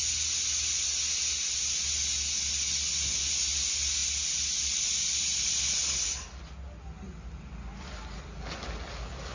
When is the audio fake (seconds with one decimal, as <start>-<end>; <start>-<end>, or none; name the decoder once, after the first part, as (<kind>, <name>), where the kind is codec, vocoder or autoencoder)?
none